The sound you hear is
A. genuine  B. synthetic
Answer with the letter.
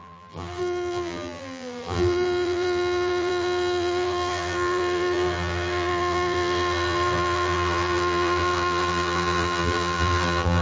B